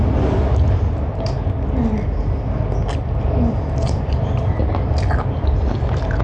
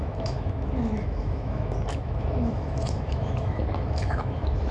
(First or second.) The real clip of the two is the first